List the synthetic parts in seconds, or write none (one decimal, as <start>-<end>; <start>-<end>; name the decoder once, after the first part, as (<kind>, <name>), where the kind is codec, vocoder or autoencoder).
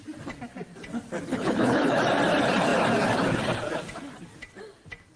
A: 1.3-2.0 (codec, HILCodec)